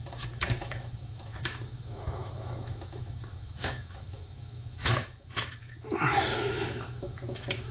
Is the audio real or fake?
fake